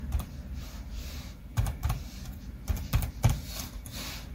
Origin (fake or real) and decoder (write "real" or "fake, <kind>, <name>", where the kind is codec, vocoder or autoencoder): fake, vocoder, BigVGAN v2